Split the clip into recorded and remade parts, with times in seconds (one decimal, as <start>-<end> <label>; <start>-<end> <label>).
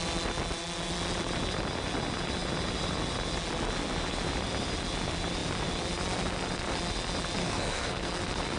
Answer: 0.0-7.4 recorded; 7.4-8.2 remade; 8.2-8.6 recorded